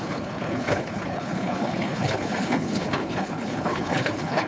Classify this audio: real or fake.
fake